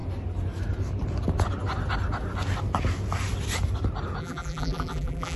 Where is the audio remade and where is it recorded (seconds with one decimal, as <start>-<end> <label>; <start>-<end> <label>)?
0.0-4.2 recorded; 4.2-5.4 remade